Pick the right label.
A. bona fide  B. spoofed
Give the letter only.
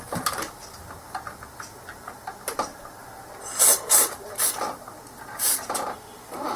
B